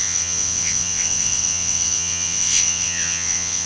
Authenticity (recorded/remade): remade